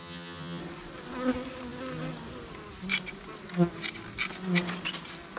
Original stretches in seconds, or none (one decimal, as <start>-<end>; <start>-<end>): 0.6-5.4